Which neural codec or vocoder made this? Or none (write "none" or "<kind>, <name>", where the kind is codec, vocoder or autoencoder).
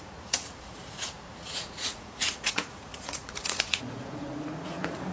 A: vocoder, Vocos